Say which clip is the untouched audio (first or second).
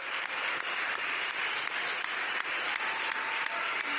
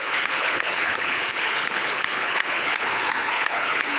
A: first